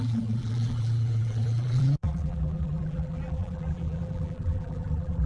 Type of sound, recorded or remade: remade